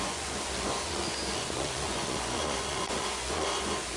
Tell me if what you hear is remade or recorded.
remade